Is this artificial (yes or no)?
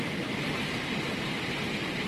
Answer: no